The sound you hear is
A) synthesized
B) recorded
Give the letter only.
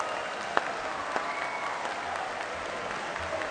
B